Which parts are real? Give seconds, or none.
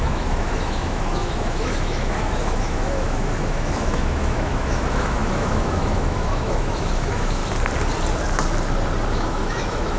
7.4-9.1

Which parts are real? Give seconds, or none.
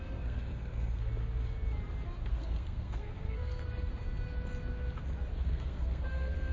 1.1-2.3; 3.9-5.3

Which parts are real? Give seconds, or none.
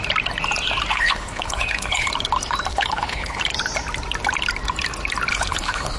0.0-0.9; 2.1-2.7; 3.4-5.3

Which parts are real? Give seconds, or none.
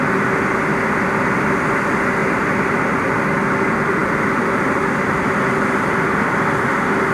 0.0-7.1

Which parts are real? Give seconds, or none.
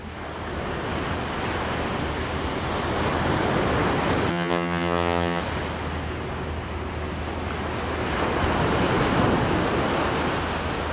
0.0-4.3; 5.4-10.9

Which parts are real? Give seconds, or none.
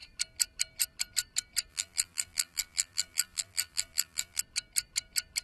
0.0-1.7; 4.4-5.4